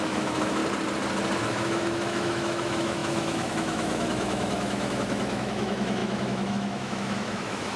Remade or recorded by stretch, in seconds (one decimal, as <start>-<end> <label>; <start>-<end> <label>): 0.0-0.6 remade; 0.6-1.4 recorded; 1.4-7.8 remade